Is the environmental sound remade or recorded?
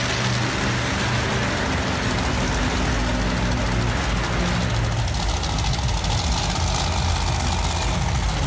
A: recorded